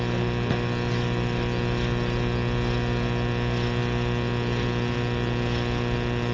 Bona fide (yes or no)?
yes